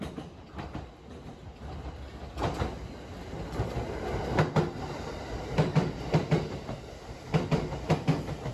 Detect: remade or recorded recorded